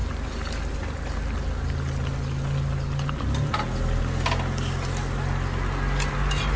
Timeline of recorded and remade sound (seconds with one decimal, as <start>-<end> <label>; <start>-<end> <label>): 0.0-6.6 recorded